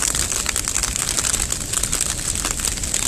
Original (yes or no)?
yes